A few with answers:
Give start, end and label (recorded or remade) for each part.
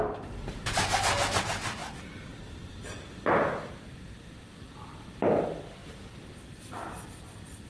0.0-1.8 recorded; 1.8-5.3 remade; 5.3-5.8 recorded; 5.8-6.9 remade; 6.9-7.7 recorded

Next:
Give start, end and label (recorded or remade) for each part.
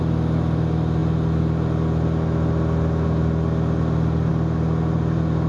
0.0-5.5 recorded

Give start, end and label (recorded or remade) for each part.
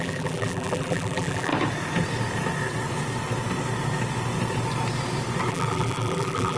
0.0-1.5 remade; 1.5-5.5 recorded; 5.5-6.6 remade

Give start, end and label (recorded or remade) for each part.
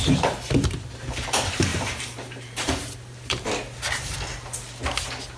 0.0-1.7 recorded; 1.7-3.5 remade; 3.5-5.4 recorded